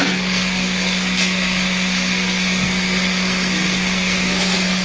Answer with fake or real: fake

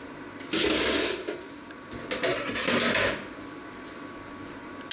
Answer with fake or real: real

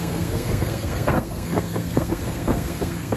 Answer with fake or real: fake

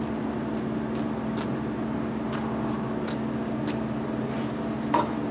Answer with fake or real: real